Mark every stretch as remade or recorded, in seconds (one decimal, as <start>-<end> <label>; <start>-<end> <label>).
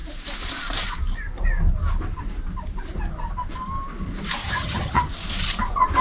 0.0-4.4 recorded; 4.4-5.1 remade; 5.1-6.0 recorded